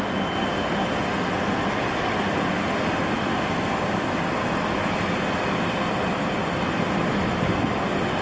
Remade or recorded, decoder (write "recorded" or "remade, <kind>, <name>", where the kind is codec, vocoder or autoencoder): recorded